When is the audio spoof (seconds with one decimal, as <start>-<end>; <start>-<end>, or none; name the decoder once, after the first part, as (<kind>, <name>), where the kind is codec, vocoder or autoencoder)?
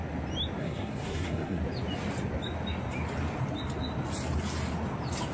0.6-1.6 (codec, SNAC)